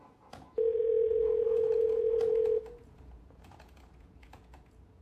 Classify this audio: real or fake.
fake